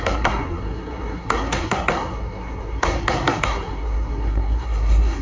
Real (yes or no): no